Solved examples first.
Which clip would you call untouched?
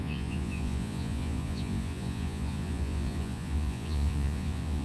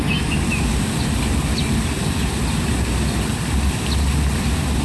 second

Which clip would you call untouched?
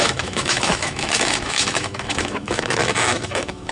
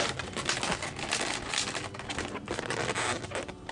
second